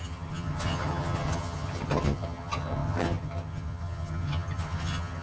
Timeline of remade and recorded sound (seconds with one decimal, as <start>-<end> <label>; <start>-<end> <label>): 0.0-5.2 remade